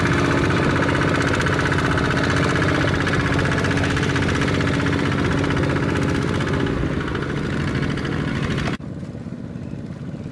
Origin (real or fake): real